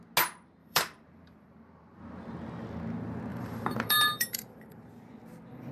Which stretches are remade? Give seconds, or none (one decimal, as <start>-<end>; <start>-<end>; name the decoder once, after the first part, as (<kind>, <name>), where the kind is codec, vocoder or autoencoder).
0.6-2.0 (vocoder, BigVGAN v2); 3.3-4.9